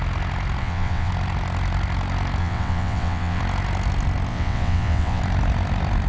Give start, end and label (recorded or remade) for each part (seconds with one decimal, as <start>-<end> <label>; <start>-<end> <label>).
0.0-0.6 recorded; 0.6-1.1 remade; 1.1-2.4 recorded; 2.4-3.4 remade; 3.4-4.3 recorded; 4.3-5.2 remade; 5.2-6.1 recorded